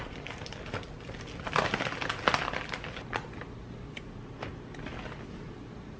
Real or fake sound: real